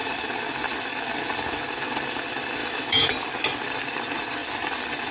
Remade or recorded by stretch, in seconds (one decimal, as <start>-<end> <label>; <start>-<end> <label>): 0.0-2.6 recorded; 2.6-3.1 remade; 3.1-5.1 recorded